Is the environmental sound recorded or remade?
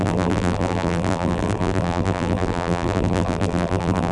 remade